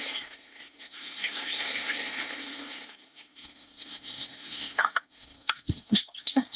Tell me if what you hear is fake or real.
fake